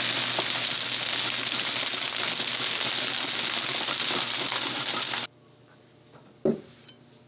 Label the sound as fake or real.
real